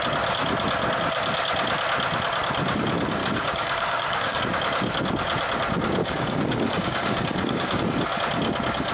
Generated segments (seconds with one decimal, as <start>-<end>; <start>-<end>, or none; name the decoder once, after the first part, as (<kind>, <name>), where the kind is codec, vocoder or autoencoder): 3.2-4.4 (codec, DAC); 6.0-7.8